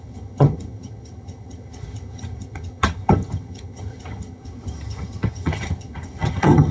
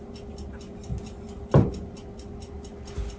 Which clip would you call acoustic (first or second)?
second